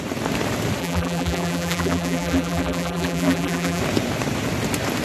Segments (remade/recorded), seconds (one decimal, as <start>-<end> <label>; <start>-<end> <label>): 0.0-0.8 recorded; 0.8-3.8 remade; 3.8-5.0 recorded